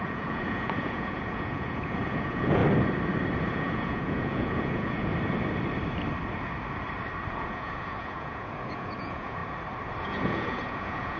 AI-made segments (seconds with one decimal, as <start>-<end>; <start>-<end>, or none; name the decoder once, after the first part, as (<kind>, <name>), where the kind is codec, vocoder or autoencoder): 0.0-2.6 (vocoder, Vocos); 3.5-5.1; 7.3-9.4; 10.0-11.2